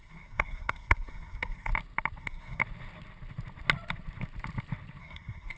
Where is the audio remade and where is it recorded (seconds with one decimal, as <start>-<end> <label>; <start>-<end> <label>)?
0.0-1.7 remade; 1.7-2.2 recorded; 2.2-2.6 remade; 2.6-5.0 recorded; 5.0-5.6 remade